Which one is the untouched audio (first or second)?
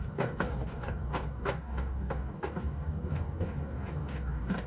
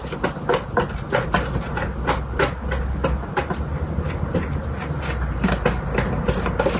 second